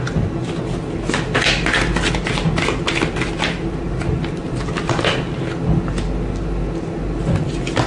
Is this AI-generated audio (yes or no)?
no